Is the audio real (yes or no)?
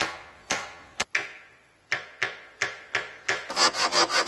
no